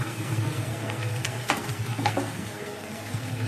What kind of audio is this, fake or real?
fake